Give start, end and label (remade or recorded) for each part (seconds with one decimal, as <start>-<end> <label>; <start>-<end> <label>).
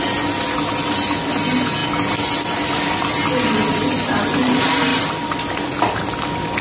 0.0-4.9 recorded; 4.9-5.4 remade; 5.4-6.6 recorded